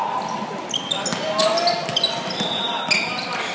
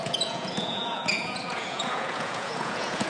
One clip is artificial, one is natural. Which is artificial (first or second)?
second